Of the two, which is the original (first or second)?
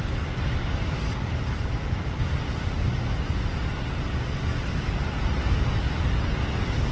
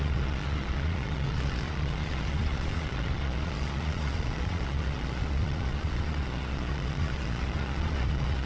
first